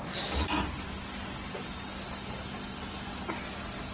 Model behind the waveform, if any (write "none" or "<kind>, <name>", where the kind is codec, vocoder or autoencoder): none